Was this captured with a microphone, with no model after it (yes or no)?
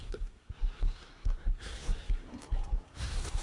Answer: no